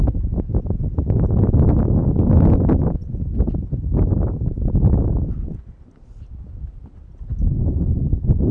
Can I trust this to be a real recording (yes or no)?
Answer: no